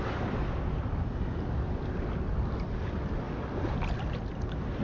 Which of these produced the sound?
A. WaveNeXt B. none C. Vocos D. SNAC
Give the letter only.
B